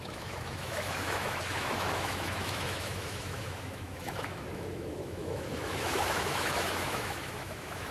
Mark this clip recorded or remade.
remade